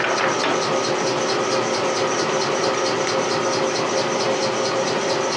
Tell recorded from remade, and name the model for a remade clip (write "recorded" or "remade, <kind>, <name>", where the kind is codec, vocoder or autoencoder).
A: recorded